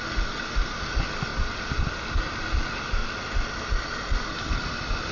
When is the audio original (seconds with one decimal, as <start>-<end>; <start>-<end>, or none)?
0.0-5.1

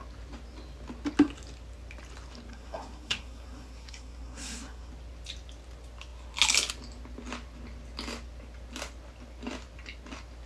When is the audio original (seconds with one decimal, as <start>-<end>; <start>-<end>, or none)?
0.0-2.5; 4.9-10.5

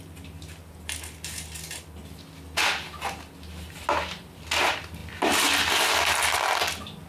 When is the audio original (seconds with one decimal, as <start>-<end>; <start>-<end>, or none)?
0.0-7.1

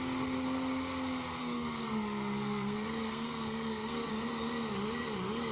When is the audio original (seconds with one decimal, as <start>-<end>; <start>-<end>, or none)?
0.0-1.4; 4.1-5.5

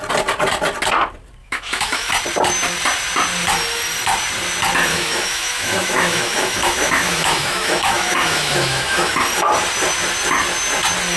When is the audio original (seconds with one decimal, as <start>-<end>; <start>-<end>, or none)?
0.0-1.4; 2.1-4.9; 9.1-11.2

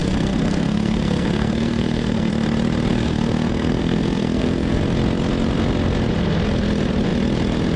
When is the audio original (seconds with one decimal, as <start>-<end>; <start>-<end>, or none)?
2.3-2.9; 4.8-7.8

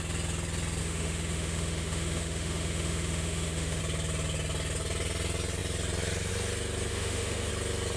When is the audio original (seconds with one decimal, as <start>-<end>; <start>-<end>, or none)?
0.0-0.8; 3.8-6.9; 7.5-8.0

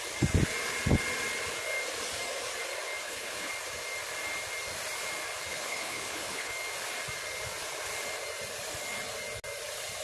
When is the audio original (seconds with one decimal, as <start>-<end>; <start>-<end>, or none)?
0.0-3.0; 3.5-5.5; 6.5-10.0